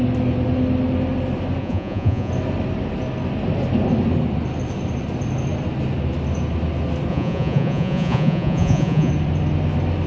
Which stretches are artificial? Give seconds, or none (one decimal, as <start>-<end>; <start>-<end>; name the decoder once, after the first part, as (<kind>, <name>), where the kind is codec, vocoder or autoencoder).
1.6-2.3 (vocoder, Vocos); 7.1-9.1